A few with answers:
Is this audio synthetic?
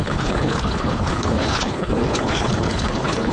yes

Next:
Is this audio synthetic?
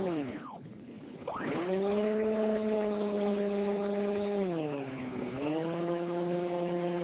yes